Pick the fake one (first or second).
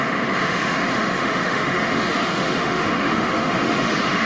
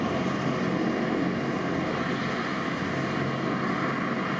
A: first